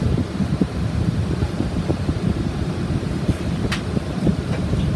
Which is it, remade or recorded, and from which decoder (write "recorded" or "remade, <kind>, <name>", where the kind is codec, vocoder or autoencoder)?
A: remade, vocoder, BigVGAN v2